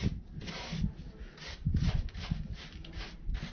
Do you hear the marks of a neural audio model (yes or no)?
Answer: no